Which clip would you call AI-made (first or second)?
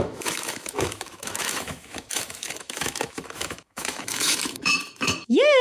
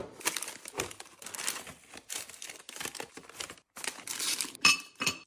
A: first